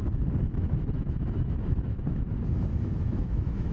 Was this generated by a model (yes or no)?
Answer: yes